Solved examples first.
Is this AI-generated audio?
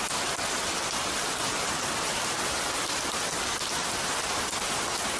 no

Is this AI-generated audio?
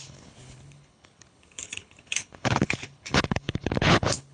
yes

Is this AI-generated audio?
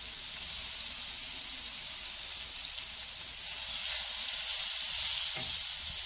no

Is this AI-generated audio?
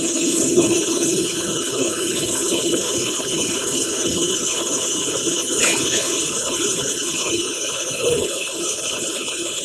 yes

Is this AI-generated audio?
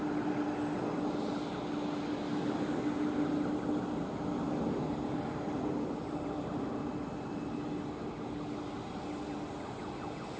no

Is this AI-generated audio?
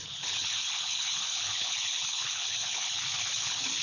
yes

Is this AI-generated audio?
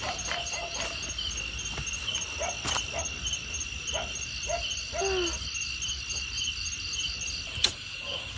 no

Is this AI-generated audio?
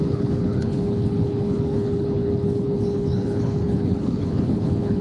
yes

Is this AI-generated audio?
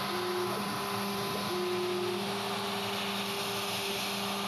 no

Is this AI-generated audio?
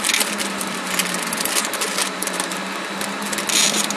no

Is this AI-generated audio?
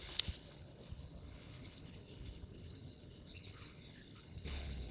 yes